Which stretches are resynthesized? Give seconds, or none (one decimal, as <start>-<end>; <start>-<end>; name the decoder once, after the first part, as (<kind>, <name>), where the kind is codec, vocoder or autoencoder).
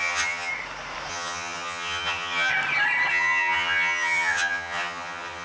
0.0-0.5 (vocoder, HiFi-GAN); 1.1-2.5; 3.1-5.4